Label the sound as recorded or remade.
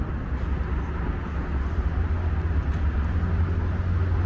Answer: recorded